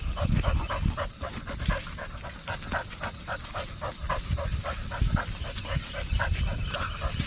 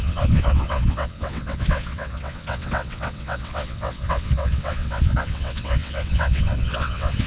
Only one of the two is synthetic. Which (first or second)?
second